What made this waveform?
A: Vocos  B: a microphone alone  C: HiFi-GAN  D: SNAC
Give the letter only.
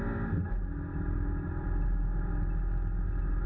B